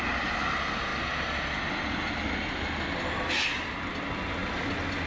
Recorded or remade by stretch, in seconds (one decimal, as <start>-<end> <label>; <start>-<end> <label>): 0.0-5.1 recorded